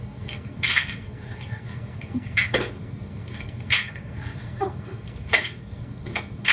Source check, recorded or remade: remade